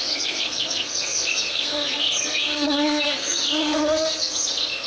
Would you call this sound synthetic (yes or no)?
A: yes